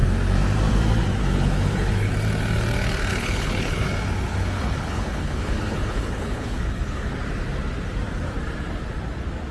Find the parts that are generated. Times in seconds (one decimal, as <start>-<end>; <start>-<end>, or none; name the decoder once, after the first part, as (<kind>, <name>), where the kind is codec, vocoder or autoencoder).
1.2-2.1 (codec, HILCodec); 3.1-3.9; 4.3-7.1